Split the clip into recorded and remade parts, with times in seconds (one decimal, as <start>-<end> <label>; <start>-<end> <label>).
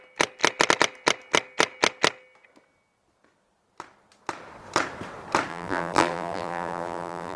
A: 0.0-5.5 recorded; 5.5-7.4 remade